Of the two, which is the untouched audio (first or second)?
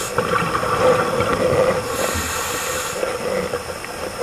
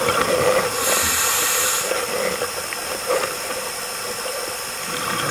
first